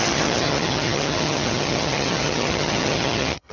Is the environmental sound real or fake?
fake